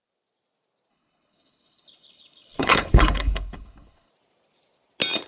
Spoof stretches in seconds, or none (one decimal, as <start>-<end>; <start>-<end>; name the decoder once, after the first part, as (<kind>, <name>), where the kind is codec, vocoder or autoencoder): 0.9-4.1 (codec, HILCodec)